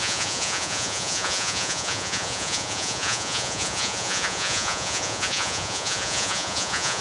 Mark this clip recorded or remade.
remade